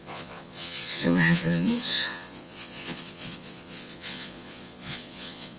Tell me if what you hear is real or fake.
fake